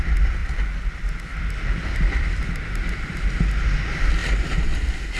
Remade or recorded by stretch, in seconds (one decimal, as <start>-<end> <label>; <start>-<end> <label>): 0.0-5.2 recorded